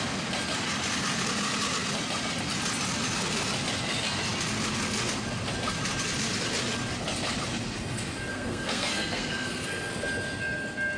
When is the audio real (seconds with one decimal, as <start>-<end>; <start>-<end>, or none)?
0.0-8.3; 9.9-11.0